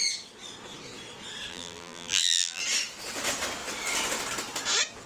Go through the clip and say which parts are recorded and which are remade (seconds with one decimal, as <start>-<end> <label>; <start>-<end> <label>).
0.0-1.5 recorded; 1.5-2.6 remade; 2.6-5.1 recorded